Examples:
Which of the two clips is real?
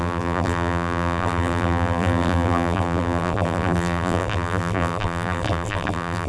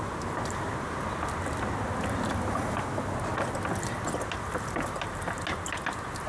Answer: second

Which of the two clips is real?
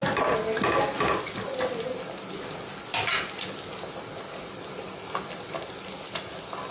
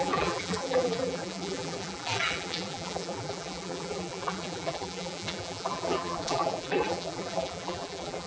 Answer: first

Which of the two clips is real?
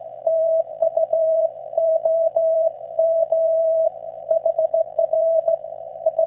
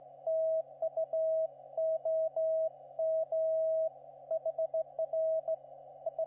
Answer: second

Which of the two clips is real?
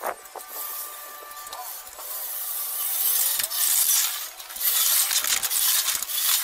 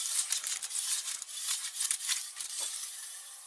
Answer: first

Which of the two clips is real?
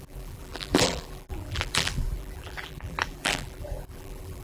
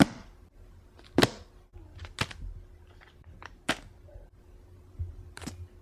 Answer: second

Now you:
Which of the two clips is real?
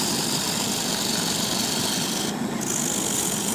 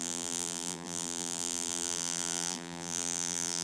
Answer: first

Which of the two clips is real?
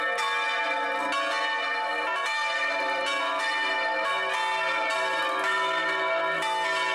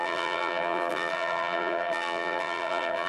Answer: first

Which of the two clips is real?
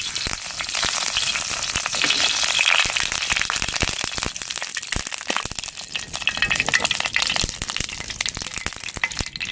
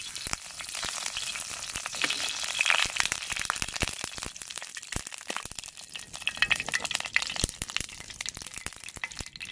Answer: first